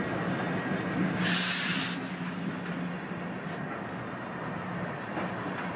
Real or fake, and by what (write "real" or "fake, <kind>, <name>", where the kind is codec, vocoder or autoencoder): real